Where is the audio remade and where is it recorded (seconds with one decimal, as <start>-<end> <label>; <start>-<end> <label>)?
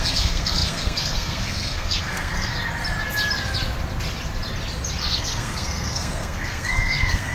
0.0-2.5 remade; 2.5-5.0 recorded; 5.0-7.3 remade